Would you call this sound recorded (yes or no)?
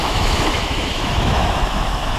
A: no